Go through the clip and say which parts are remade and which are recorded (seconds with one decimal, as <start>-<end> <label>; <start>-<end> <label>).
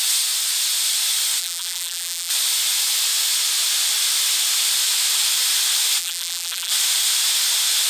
0.0-1.4 recorded; 1.4-2.3 remade; 2.3-6.0 recorded; 6.0-6.7 remade; 6.7-7.9 recorded